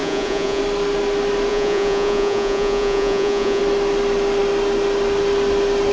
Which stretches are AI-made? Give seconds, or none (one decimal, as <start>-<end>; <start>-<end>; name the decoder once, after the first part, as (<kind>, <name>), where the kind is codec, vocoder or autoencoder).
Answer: 0.0-0.6 (vocoder, Vocos); 1.5-3.6